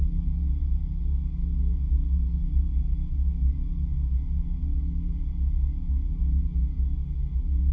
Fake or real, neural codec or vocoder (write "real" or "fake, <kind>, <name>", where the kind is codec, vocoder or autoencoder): real